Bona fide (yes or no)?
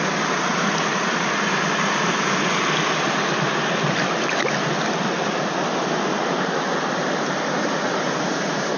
yes